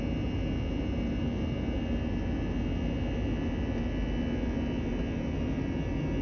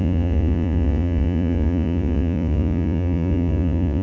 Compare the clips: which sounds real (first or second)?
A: first